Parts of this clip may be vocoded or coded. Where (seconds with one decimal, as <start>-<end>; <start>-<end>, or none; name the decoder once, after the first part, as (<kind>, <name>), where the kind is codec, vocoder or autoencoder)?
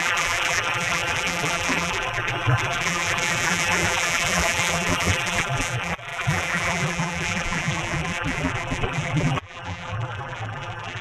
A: 0.0-11.0 (vocoder, BigVGAN v2)